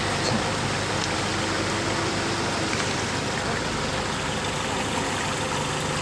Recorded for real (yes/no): yes